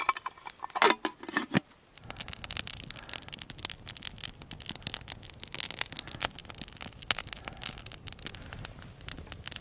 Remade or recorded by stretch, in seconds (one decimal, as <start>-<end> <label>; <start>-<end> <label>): 0.0-9.6 recorded